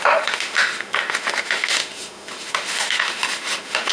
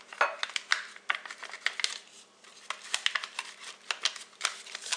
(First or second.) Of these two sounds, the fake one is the first